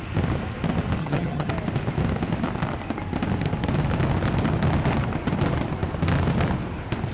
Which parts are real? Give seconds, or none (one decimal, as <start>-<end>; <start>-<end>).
0.0-1.0; 1.5-7.1